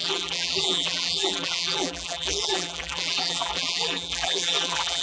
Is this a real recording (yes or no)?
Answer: no